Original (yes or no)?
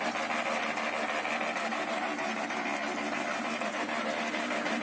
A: yes